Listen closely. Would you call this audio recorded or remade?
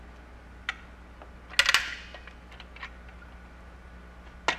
recorded